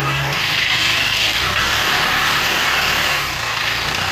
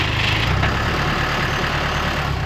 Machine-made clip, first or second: first